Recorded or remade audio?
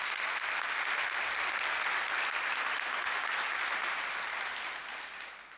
recorded